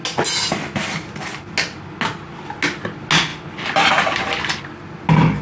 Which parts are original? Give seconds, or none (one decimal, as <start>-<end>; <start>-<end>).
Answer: 0.0-5.4